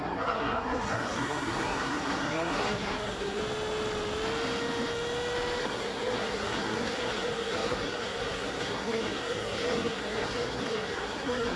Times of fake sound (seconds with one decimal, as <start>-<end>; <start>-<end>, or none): 0.0-3.4; 5.6-11.6